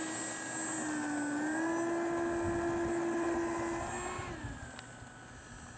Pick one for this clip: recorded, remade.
recorded